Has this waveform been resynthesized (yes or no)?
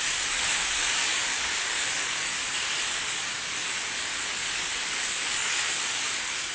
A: yes